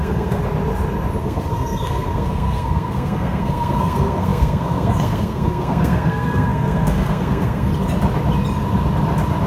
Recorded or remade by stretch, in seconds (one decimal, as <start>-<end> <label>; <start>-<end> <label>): 0.0-0.4 remade; 0.4-1.2 recorded; 1.2-7.7 remade; 7.7-9.5 recorded